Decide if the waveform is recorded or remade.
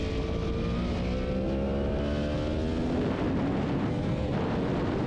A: recorded